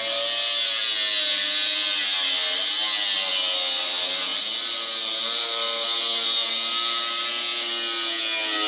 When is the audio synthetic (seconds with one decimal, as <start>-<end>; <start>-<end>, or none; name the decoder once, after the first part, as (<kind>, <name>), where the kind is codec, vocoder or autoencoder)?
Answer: none